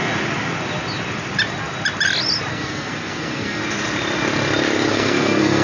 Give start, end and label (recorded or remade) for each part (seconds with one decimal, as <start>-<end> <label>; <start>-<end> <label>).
0.0-2.5 recorded; 2.5-3.6 remade; 3.6-4.9 recorded; 4.9-5.6 remade